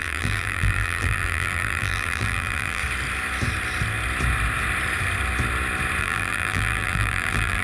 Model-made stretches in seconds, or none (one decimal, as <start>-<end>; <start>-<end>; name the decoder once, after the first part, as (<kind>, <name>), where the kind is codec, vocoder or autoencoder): 0.0-2.8 (vocoder, BigVGAN v2); 6.0-7.6

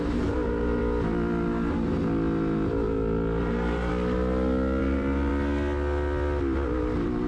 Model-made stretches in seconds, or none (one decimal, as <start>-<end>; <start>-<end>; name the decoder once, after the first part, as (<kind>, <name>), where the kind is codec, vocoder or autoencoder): 0.0-0.8 (vocoder, BigVGAN v2); 3.4-3.9; 4.8-5.3

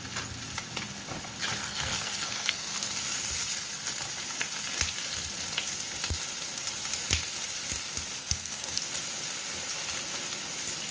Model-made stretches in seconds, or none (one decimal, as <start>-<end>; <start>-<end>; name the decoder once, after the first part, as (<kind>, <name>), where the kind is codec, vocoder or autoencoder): 1.6-2.9 (codec, SNAC); 8.2-8.8

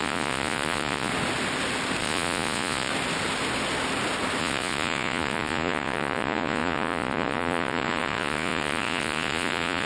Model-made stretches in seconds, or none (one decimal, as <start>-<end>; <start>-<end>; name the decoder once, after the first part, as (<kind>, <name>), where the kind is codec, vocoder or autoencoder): 0.0-1.1 (vocoder, Vocos); 2.0-2.9; 4.4-9.9

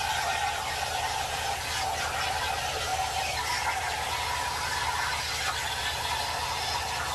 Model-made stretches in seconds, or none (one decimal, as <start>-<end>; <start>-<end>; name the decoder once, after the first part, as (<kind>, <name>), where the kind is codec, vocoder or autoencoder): none

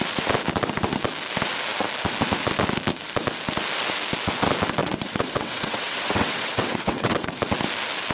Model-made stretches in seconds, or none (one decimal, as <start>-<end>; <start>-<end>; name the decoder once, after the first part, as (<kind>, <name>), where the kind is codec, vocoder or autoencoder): 4.8-7.4 (vocoder, WaveNeXt)